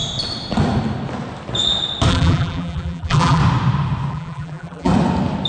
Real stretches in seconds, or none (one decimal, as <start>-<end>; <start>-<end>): 0.0-2.1; 3.4-4.1; 4.9-5.5